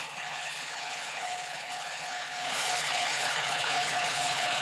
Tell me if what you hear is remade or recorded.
remade